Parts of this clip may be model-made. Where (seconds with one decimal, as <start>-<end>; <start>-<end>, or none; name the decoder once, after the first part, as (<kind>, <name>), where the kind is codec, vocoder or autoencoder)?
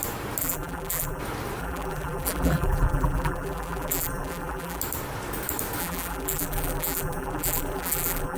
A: 0.4-1.2 (vocoder, BigVGAN v2); 1.6-4.8; 5.8-8.4